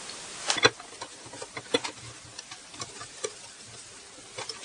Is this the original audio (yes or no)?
yes